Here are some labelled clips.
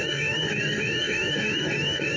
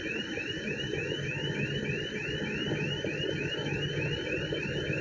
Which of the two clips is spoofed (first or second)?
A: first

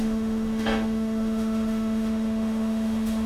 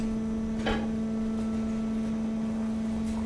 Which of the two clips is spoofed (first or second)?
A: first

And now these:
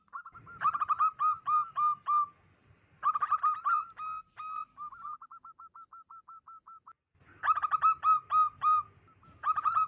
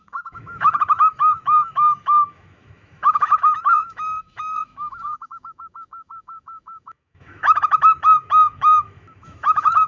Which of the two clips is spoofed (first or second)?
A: second